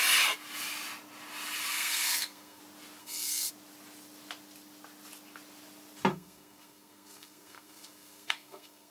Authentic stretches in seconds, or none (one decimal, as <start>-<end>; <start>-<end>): 0.0-1.7; 2.6-3.0; 3.5-6.1